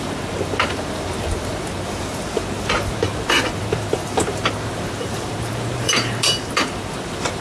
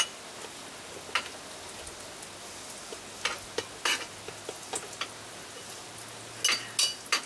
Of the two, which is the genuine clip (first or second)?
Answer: second